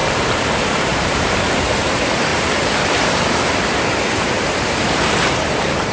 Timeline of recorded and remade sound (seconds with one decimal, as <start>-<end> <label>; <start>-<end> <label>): 0.0-2.3 remade; 2.3-3.7 recorded; 3.7-5.9 remade